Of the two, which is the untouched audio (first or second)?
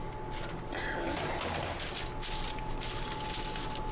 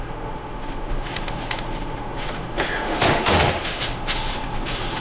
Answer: first